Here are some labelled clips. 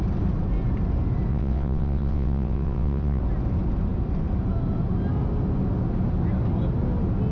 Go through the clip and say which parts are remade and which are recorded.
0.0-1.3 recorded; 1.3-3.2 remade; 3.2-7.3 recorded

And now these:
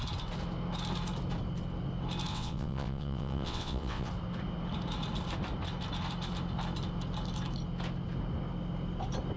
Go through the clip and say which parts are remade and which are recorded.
0.0-2.3 recorded; 2.3-4.1 remade; 4.1-9.4 recorded